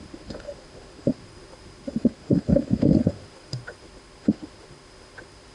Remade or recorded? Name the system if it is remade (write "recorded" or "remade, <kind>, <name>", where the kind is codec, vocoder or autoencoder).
remade, autoencoder, DAC-VAE